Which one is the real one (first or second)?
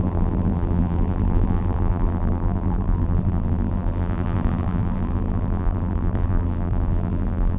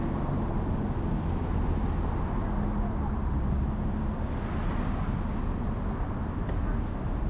second